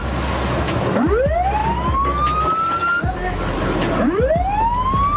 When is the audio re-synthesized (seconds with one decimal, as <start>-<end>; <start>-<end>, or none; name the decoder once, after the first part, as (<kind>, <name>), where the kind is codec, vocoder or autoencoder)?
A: none